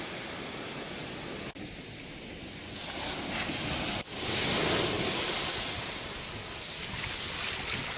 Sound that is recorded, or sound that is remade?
recorded